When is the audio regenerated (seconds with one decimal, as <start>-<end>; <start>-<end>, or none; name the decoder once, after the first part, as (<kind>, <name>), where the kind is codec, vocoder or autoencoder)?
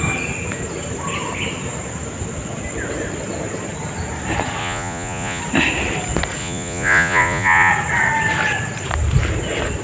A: 4.6-5.4 (vocoder, Vocos); 6.4-7.7